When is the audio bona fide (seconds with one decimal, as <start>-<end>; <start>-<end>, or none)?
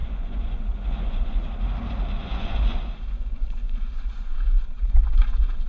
1.6-2.2